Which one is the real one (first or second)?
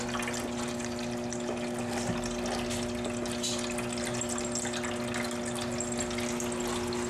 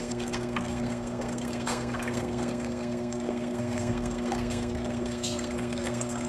first